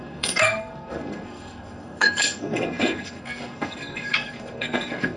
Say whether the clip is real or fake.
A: fake